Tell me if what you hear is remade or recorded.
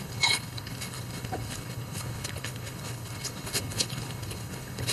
remade